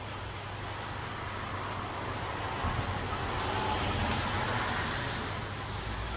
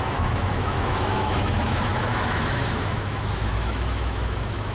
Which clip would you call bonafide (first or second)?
first